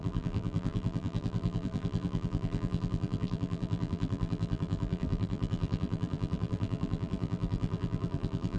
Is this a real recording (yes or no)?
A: no